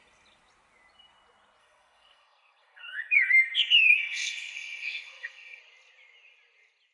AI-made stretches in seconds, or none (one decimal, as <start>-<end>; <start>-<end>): 1.6-5.6